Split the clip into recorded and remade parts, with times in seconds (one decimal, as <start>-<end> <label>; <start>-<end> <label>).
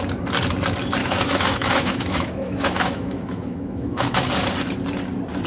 0.0-1.0 recorded; 1.0-4.3 remade; 4.3-5.5 recorded